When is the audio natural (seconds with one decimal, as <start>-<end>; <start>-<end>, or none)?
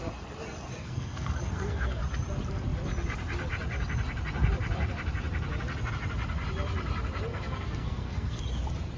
0.0-0.8; 2.0-7.3; 8.4-9.0